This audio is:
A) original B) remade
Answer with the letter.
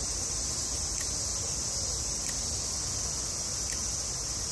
A